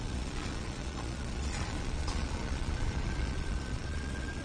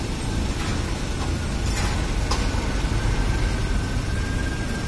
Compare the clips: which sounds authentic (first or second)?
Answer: second